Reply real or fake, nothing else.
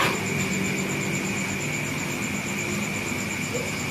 real